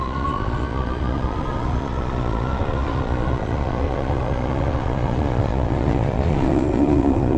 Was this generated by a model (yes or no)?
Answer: yes